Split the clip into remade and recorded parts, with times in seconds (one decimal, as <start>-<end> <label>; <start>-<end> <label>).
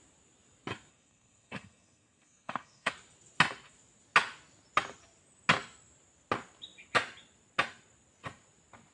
0.0-0.9 recorded; 0.9-2.9 remade; 2.9-8.9 recorded